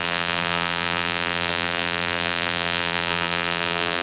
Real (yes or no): no